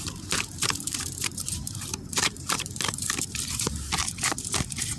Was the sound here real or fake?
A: fake